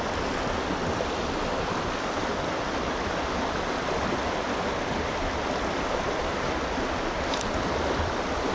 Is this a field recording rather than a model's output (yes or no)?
yes